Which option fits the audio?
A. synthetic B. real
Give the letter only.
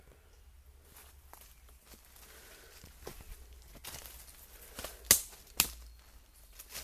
B